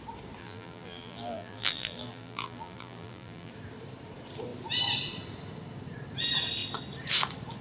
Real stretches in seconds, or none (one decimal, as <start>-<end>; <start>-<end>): 0.0-0.4; 3.5-7.6